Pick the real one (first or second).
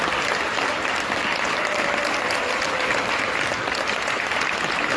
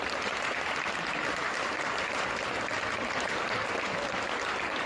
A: second